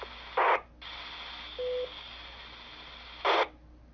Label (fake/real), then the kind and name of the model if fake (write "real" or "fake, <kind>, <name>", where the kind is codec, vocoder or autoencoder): real